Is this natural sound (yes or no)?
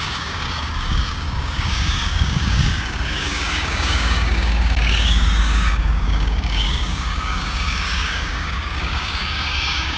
no